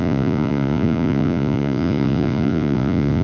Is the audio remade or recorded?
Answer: remade